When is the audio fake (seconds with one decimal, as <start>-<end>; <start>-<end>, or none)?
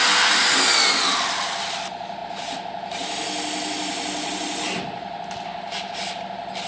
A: none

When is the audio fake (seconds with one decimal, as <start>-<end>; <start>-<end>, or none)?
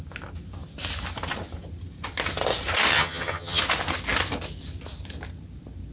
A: 2.9-3.6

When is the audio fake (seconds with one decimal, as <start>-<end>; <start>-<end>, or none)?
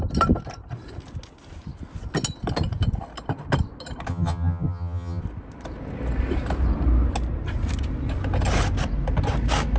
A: 4.1-5.2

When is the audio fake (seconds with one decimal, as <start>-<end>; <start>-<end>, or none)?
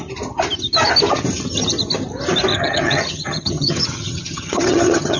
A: 2.5-5.2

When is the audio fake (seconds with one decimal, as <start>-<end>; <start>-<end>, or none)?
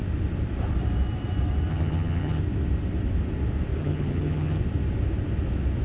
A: 1.7-2.4; 3.8-4.6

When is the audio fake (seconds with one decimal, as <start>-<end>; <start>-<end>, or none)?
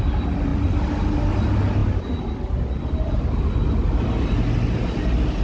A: none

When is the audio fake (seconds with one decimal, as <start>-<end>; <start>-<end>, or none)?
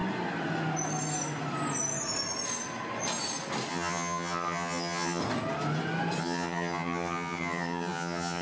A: 3.7-5.2; 6.2-8.4